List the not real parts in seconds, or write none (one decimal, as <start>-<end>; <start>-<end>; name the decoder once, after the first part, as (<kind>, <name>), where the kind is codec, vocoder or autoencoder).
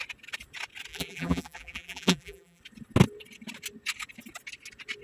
0.9-2.6 (vocoder, BigVGAN v2)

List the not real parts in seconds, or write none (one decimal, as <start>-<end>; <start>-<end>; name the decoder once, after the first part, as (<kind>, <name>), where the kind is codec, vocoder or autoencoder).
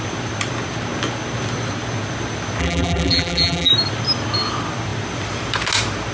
2.6-3.7 (vocoder, BigVGAN v2)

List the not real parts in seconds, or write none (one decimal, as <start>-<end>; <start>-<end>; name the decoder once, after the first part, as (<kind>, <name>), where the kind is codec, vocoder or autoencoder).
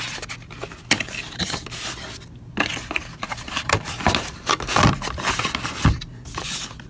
3.3-3.8 (vocoder, BigVGAN v2)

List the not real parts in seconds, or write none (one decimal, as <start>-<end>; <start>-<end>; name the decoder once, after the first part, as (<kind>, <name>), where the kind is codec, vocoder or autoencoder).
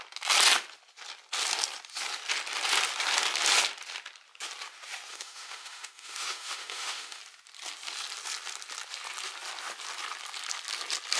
5.1-7.2 (autoencoder, DAC-VAE)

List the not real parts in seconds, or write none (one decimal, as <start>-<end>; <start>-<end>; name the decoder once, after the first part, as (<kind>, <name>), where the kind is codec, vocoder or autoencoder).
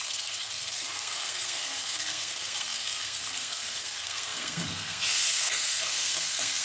0.0-6.6 (codec, SNAC)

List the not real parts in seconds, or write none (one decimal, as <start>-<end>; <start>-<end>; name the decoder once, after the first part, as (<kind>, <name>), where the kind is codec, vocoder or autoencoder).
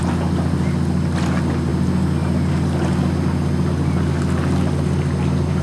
none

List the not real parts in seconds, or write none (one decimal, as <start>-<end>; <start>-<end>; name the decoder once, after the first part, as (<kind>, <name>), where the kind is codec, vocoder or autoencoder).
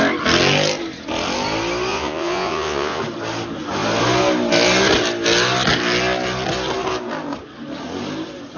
1.9-3.0 (vocoder, Vocos)